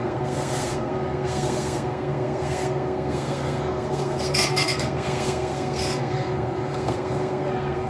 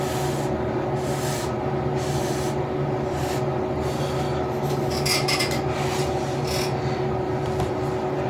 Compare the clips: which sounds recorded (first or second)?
second